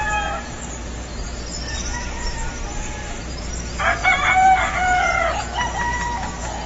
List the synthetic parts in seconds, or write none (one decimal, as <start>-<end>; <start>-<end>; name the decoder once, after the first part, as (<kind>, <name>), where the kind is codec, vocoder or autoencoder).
3.0-3.5 (vocoder, BigVGAN v2); 4.0-5.2